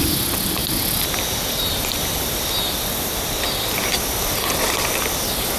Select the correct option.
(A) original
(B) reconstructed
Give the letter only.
B